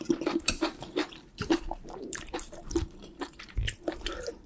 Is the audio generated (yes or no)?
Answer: yes